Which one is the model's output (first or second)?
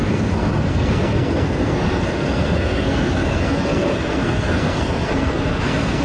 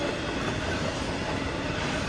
first